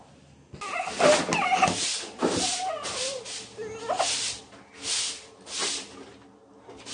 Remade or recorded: recorded